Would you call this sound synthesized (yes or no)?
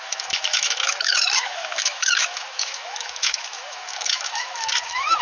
yes